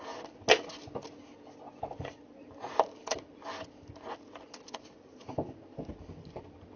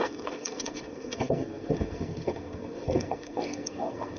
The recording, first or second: first